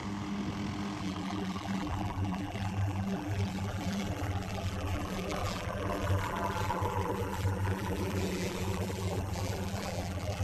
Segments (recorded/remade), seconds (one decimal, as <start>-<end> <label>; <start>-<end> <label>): 0.0-1.0 recorded; 1.0-10.4 remade